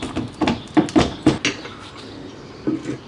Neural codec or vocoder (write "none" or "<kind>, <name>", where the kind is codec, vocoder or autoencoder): none